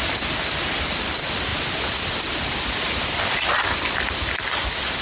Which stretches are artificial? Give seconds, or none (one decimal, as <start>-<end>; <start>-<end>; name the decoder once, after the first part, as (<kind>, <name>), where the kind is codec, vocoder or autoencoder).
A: none